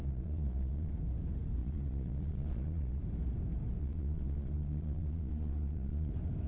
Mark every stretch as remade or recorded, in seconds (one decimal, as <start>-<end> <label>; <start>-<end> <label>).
0.0-0.9 remade; 0.9-1.6 recorded; 1.6-3.0 remade; 3.0-3.8 recorded; 3.8-6.1 remade; 6.1-6.5 recorded

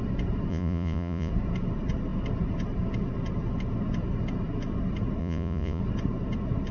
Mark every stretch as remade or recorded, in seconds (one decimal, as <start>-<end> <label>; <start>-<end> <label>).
0.0-0.5 recorded; 0.5-1.3 remade; 1.3-5.2 recorded; 5.2-5.8 remade; 5.8-6.7 recorded

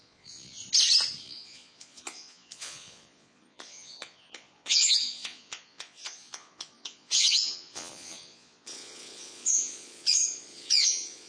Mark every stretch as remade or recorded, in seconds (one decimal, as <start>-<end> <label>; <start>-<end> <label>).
0.0-0.6 remade; 0.6-1.2 recorded; 1.2-11.3 remade